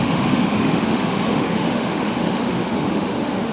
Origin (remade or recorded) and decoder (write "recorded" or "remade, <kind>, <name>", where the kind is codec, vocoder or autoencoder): remade, autoencoder, DAC-VAE